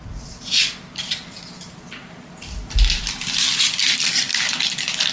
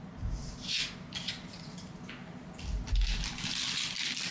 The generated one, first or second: first